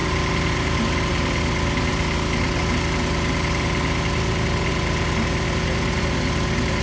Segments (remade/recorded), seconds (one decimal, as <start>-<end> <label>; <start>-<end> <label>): 0.0-6.8 recorded